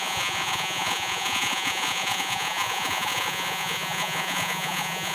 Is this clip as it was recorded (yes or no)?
no